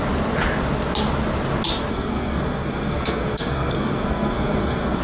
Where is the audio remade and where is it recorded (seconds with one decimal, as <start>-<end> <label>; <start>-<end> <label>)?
0.0-1.9 recorded; 1.9-5.0 remade